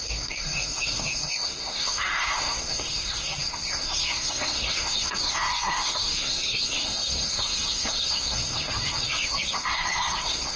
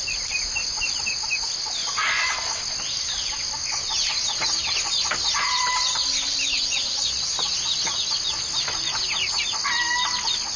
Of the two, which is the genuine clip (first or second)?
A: second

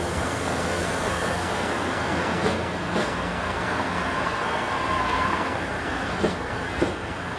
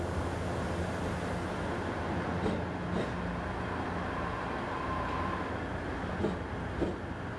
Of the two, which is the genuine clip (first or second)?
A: second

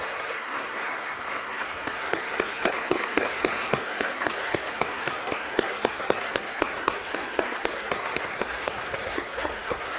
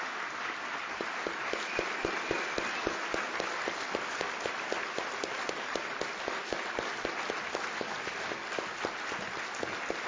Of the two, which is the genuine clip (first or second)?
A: second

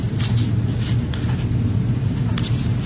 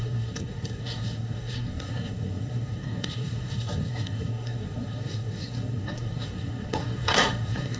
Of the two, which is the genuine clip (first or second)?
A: first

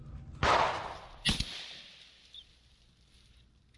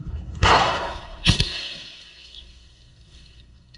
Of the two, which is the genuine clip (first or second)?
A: first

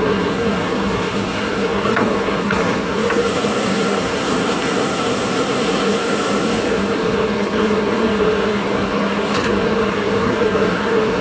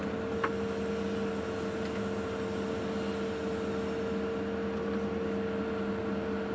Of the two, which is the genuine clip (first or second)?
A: second